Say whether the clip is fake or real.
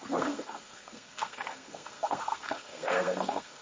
fake